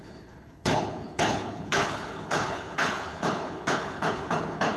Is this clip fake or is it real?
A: fake